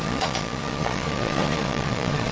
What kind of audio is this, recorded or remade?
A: remade